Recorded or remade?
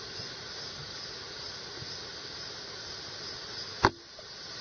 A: recorded